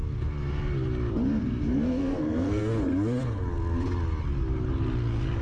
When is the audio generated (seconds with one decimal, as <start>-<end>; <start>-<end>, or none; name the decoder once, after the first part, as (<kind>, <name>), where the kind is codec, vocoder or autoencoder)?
1.4-2.6 (codec, SNAC)